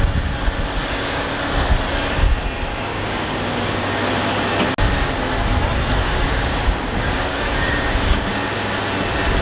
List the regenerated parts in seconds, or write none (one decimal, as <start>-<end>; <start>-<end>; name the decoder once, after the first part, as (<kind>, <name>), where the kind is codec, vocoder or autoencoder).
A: 0.8-1.3 (codec, DAC); 2.9-3.9; 6.0-8.2